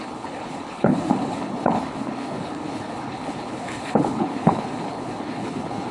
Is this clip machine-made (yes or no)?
yes